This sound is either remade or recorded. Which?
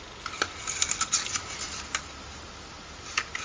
recorded